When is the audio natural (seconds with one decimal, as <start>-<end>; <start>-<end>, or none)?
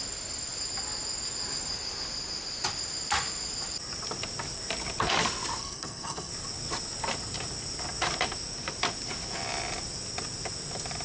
0.0-5.6; 6.3-11.0